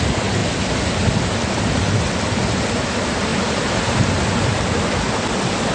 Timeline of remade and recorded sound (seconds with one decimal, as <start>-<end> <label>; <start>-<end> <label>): 0.0-3.3 recorded; 3.3-4.6 remade; 4.6-5.7 recorded